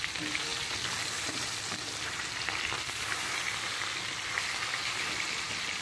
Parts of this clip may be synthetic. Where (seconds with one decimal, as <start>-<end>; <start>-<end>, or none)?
none